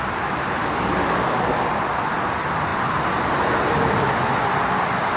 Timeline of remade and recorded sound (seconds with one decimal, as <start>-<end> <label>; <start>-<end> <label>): 0.0-0.6 recorded; 0.6-1.9 remade; 1.9-5.2 recorded

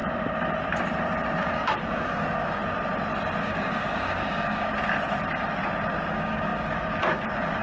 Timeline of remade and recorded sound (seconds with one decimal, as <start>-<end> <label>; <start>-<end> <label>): 0.0-1.4 recorded; 1.4-2.6 remade; 2.6-3.4 recorded; 3.4-4.7 remade; 4.7-6.1 recorded; 6.1-7.6 remade

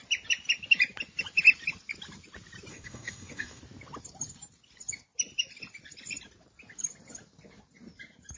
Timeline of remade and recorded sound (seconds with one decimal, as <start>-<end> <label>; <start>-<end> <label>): 0.0-2.7 recorded; 2.7-3.6 remade; 3.6-8.4 recorded